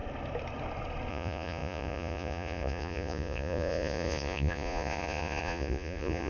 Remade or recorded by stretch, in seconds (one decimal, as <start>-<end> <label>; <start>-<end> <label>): 0.0-1.1 recorded; 1.1-6.3 remade